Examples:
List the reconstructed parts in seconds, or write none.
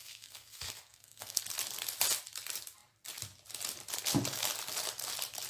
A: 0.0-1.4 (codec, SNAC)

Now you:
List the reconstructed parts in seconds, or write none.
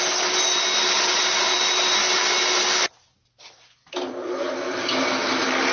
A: none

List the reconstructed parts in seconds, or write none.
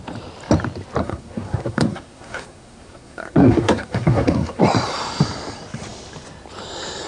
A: 1.0-4.6 (codec, SNAC)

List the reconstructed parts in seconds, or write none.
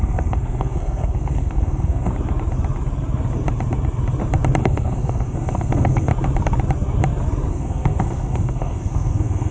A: 0.0-2.1 (codec, SNAC); 4.6-6.1; 7.5-9.5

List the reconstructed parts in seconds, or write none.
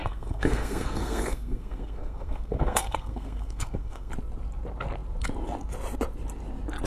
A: 0.0-4.1 (codec, SNAC)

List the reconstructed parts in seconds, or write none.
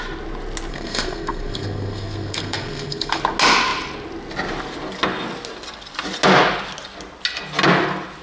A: 0.7-3.2 (codec, SNAC)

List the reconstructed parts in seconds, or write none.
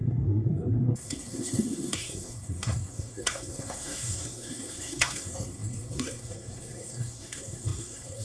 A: 0.0-8.2 (codec, SNAC)